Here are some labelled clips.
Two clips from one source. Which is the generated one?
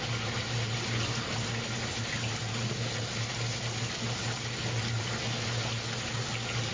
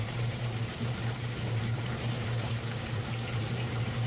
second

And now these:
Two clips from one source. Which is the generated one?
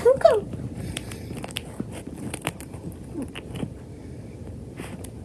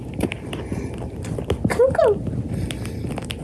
first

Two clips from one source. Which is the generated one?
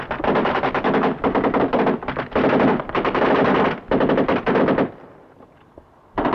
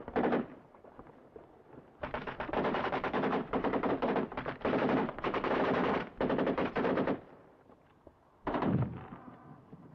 second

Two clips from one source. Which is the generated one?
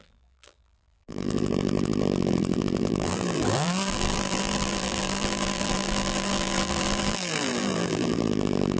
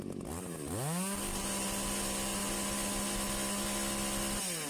first